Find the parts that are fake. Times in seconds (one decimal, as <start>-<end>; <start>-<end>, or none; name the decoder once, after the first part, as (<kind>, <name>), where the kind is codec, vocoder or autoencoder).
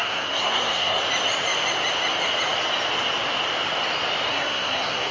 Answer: 0.0-1.0 (codec, SNAC); 4.3-5.1